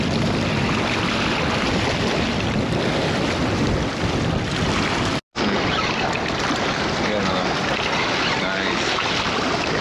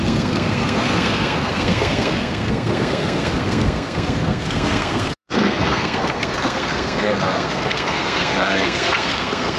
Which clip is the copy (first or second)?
second